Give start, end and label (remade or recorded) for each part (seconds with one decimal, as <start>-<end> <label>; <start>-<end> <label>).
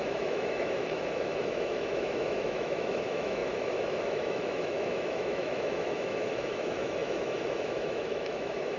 0.0-8.8 remade